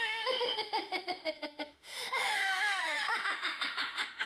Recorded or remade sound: remade